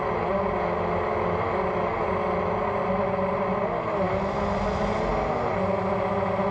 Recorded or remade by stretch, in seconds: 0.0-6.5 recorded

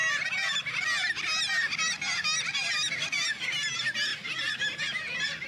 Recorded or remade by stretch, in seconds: 0.0-5.5 recorded

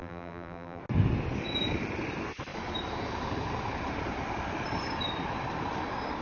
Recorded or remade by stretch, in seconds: 0.0-0.8 remade; 0.8-6.2 recorded

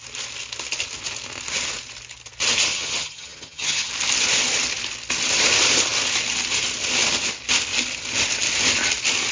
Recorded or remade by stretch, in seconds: 0.0-2.7 recorded; 2.7-3.9 remade; 3.9-9.3 recorded

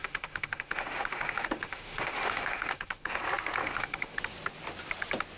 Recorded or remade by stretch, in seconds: 0.0-3.2 remade; 3.2-3.6 recorded; 3.6-4.2 remade; 4.2-5.4 recorded

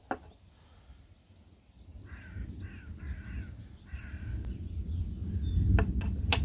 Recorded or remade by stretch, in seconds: 0.0-6.4 recorded

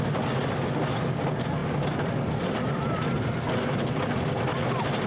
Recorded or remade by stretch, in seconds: 0.0-5.1 recorded

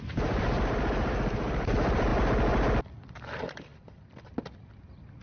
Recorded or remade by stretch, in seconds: 0.0-2.1 remade; 2.1-2.8 recorded; 2.8-5.2 remade